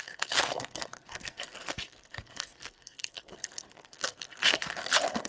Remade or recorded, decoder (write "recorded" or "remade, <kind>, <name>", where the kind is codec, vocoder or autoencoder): remade, codec, SNAC